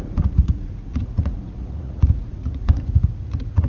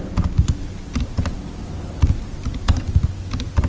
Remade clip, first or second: first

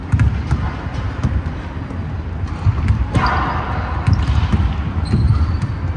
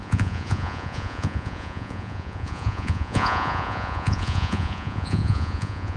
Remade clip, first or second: second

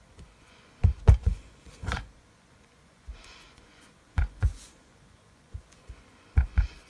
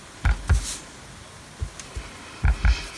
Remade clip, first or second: first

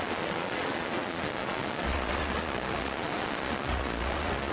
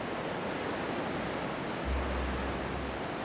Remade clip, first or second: first